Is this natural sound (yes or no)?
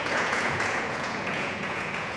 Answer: no